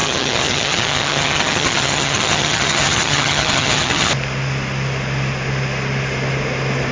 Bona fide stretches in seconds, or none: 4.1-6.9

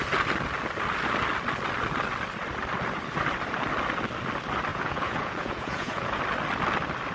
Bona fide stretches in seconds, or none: 0.0-4.7; 6.2-7.1

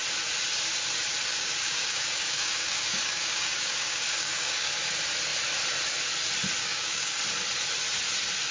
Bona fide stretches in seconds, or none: 0.0-1.3; 4.7-6.6; 7.2-8.5

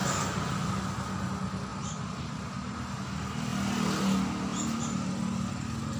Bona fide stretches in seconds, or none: 0.7-1.7; 2.8-4.5; 5.5-6.0

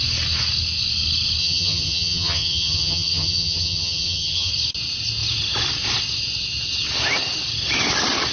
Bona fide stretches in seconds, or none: 0.0-1.4; 4.5-8.3

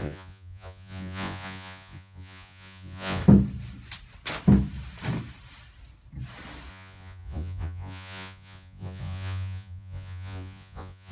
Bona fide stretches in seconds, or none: 3.2-6.7

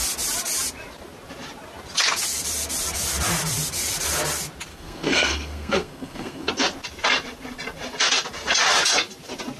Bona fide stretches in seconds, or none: 0.0-4.7; 6.5-9.6